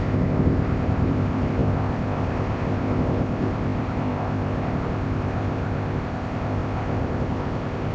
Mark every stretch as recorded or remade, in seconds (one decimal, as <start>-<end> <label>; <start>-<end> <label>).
0.0-7.9 remade